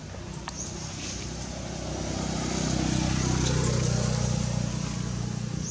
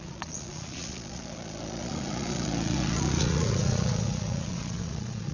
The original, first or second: first